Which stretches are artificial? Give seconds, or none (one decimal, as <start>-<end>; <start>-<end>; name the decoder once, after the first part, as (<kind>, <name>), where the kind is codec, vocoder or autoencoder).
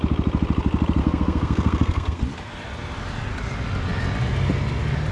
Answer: 1.0-2.2 (codec, SNAC)